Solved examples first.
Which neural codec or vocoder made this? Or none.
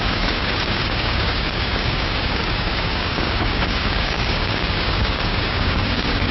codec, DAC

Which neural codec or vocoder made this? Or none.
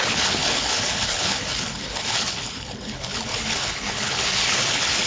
codec, HILCodec